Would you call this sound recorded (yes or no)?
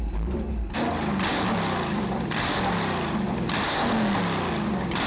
yes